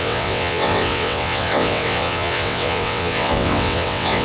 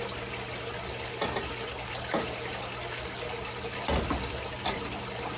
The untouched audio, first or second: second